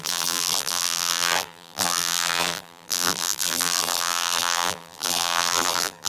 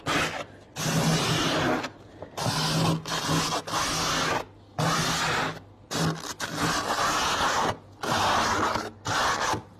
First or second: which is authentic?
second